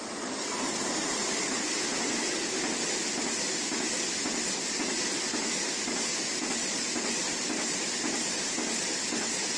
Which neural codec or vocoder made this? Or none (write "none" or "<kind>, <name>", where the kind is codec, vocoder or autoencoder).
none